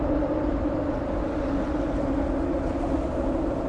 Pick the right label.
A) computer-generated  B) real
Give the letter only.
B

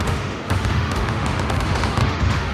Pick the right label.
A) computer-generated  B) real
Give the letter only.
A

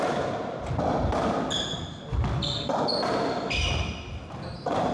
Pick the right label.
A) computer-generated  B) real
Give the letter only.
B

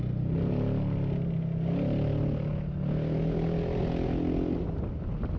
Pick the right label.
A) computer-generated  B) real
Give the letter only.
B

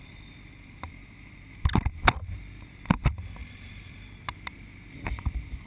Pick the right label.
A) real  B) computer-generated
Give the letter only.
A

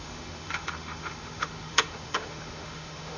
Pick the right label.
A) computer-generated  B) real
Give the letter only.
A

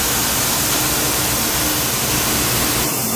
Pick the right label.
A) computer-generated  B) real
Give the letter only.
B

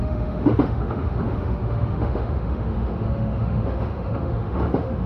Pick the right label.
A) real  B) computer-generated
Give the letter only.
B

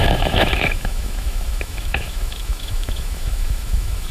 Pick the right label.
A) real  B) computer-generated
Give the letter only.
B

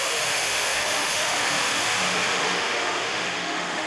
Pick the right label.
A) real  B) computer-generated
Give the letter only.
B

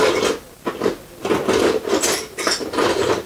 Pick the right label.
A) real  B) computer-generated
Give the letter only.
A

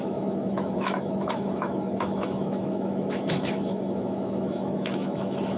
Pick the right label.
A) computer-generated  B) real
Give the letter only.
A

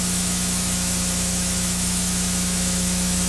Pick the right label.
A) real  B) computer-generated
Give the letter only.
B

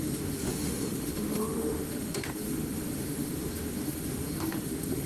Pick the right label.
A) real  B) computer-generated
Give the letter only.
B